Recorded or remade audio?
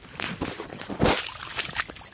recorded